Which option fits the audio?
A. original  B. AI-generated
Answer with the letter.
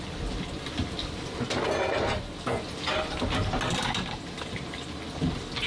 A